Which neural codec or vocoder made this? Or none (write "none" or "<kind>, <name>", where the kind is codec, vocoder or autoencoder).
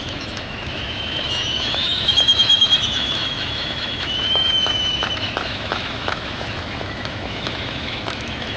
autoencoder, DAC-VAE